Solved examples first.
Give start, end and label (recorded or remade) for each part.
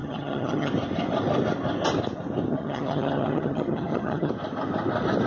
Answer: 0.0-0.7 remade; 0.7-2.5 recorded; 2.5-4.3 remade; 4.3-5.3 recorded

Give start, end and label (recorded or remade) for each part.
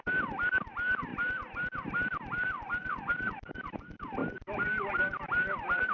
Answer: 0.0-5.9 recorded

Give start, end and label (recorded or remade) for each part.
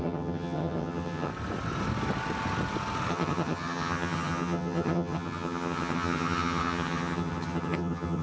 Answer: 0.0-1.3 remade; 1.3-3.1 recorded; 3.1-8.2 remade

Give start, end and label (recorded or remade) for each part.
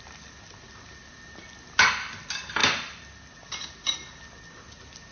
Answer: 0.0-5.1 recorded